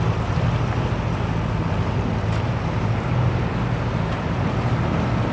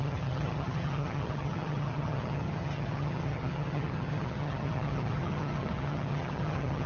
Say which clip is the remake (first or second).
second